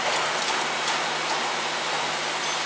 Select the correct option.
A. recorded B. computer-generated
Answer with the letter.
A